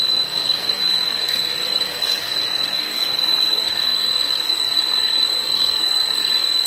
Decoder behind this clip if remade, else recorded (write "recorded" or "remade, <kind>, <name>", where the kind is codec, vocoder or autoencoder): remade, codec, SNAC